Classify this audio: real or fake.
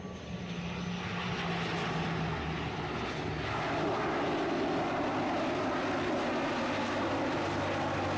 real